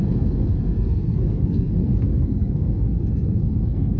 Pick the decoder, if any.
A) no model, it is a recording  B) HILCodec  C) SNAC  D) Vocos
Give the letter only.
C